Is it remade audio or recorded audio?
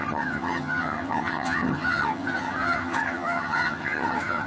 remade